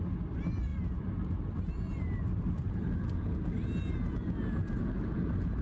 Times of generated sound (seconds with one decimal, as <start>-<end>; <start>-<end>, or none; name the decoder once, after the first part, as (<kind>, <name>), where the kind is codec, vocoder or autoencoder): none